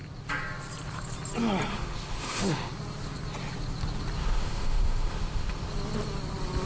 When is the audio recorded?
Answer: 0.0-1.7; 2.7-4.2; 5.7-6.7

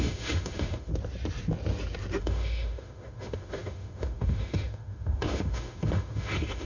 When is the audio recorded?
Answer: 0.9-2.2

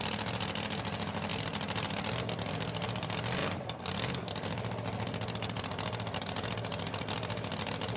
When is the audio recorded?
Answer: 0.0-8.0